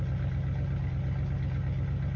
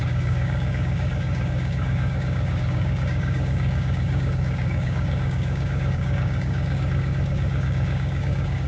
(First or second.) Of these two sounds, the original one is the first